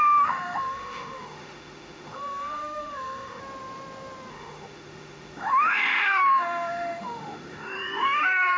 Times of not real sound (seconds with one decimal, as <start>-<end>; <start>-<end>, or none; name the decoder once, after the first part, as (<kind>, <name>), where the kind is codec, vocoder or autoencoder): 0.0-3.4 (autoencoder, DAC-VAE); 4.3-8.6